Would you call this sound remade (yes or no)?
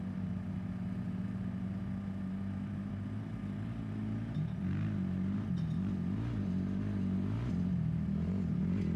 no